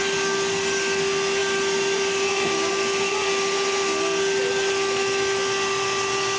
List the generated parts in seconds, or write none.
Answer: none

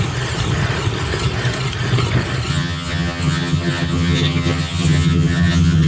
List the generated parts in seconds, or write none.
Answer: 2.5-5.9

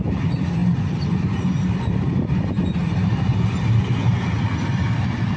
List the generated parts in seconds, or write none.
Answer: none